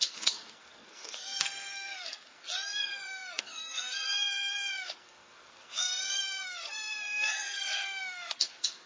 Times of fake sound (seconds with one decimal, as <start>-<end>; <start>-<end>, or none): 0.0-8.9